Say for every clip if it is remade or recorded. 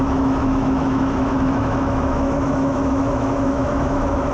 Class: remade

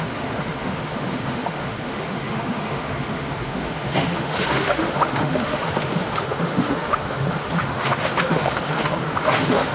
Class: remade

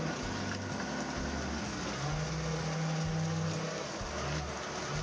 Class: recorded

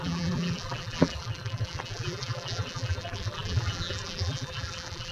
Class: remade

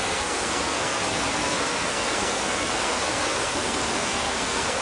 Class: remade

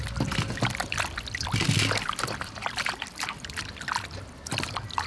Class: recorded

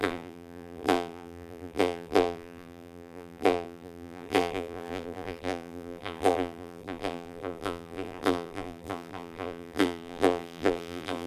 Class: remade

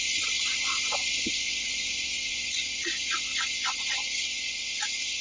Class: recorded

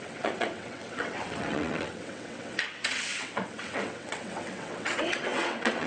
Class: remade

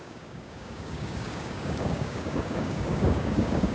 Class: remade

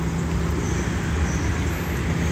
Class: recorded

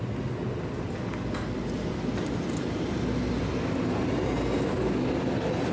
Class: recorded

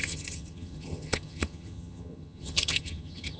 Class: remade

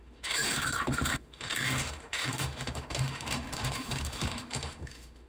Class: remade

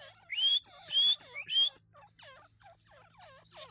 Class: recorded